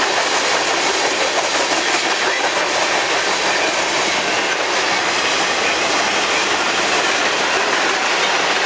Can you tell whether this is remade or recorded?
recorded